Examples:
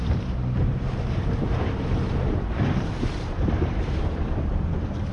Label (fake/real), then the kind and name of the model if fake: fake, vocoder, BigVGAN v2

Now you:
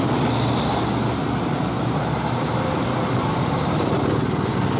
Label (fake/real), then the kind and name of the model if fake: real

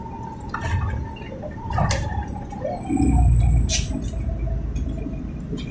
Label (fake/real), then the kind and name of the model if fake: real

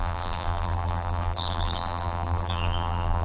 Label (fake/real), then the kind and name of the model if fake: fake, vocoder, BigVGAN v2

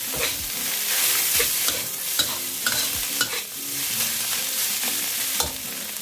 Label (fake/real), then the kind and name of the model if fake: real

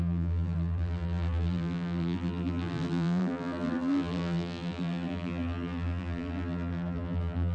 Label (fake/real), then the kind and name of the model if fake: fake, vocoder, BigVGAN v2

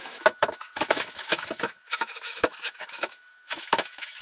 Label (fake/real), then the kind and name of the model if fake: fake, autoencoder, DAC-VAE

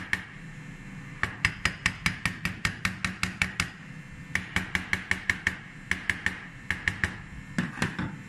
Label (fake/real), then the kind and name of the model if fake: real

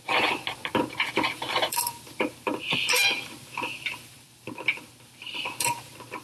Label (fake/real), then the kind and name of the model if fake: fake, vocoder, BigVGAN v2